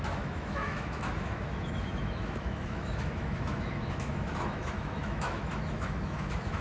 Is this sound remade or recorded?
remade